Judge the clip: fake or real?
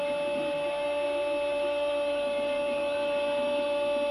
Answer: real